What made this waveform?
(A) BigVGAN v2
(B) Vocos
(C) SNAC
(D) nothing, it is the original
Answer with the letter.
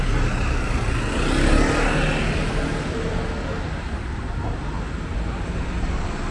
D